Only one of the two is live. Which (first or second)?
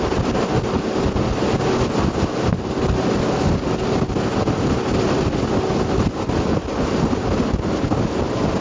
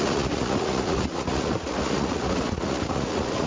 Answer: first